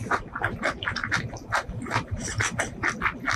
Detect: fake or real real